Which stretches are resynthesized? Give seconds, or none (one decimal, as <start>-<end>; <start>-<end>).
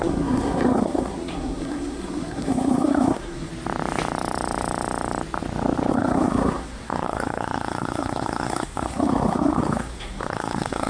0.0-3.5; 5.9-10.9